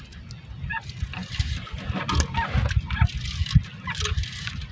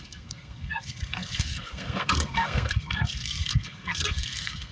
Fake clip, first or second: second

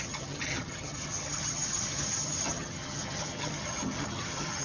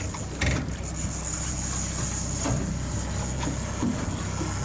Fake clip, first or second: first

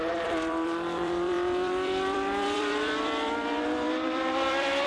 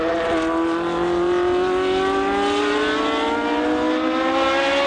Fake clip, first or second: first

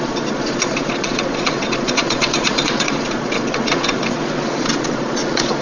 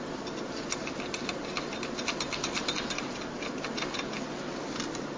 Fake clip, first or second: first